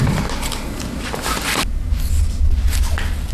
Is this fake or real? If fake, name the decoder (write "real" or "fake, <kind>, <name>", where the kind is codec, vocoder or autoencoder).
real